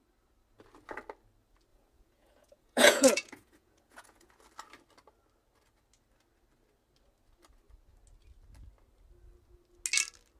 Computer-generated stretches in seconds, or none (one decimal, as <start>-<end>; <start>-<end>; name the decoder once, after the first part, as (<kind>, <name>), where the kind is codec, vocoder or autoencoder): 1.7-4.4 (vocoder, Vocos)